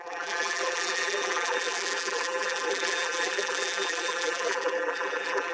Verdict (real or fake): fake